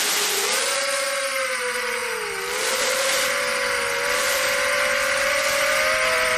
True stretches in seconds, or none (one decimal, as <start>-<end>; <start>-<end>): 0.0-6.4